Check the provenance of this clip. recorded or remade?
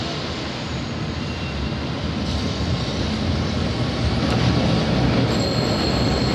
recorded